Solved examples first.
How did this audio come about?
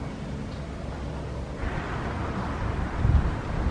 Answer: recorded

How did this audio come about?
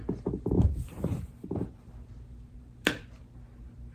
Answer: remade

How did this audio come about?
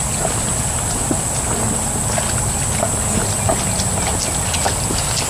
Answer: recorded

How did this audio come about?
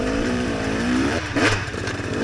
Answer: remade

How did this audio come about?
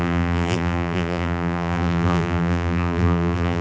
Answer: remade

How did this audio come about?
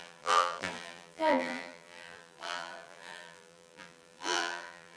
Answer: remade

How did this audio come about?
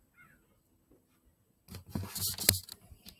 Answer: recorded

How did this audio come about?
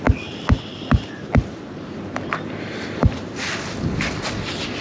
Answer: recorded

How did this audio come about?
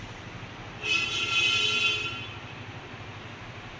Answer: recorded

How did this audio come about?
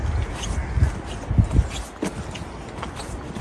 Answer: recorded